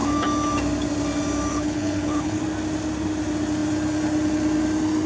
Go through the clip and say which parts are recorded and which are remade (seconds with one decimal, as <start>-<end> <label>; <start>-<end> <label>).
0.0-1.5 recorded; 1.5-2.4 remade; 2.4-5.1 recorded